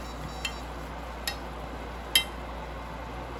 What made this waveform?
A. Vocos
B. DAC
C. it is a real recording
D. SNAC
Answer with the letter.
C